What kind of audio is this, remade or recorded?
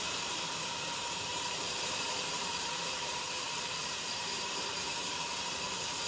remade